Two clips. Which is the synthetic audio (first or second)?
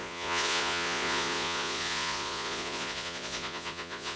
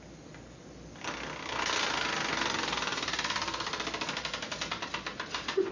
first